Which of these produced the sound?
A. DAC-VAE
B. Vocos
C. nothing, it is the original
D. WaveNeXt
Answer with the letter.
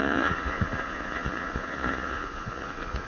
B